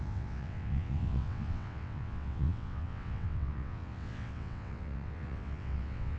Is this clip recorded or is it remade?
remade